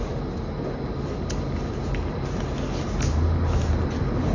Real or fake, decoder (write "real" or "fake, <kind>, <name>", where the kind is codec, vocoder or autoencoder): real